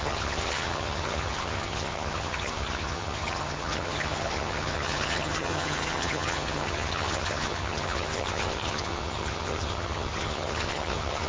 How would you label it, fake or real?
fake